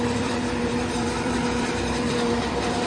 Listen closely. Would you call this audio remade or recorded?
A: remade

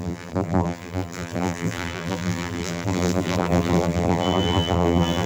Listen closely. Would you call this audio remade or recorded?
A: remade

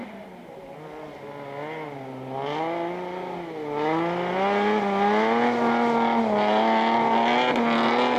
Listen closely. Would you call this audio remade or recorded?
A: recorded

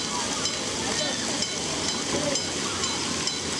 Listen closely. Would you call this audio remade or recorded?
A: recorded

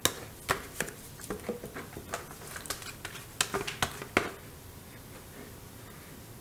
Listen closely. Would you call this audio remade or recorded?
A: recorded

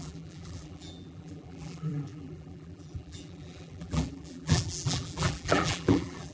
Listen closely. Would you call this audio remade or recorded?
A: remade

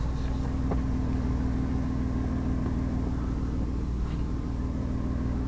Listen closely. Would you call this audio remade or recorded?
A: recorded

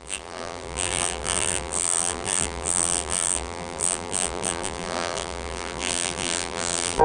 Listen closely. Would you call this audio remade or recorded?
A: remade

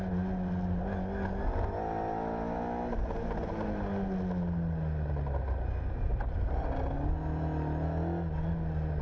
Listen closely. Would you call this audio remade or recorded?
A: recorded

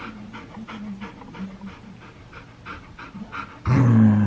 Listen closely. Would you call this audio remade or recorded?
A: recorded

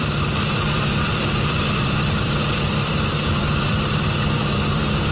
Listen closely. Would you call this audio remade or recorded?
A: remade